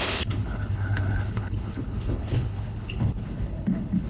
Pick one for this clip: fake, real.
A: fake